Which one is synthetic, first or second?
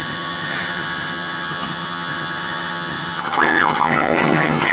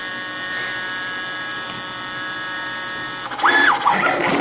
first